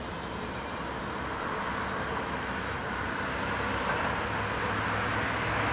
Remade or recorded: recorded